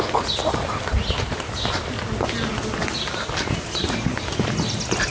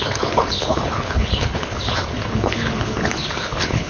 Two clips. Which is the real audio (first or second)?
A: first